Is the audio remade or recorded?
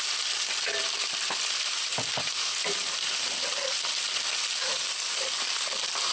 remade